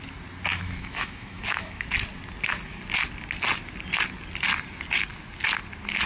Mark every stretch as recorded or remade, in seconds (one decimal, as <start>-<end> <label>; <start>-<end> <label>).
0.0-0.5 recorded; 0.5-1.9 remade; 1.9-6.1 recorded